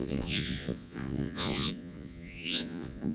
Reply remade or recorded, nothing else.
remade